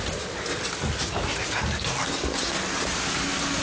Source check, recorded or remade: recorded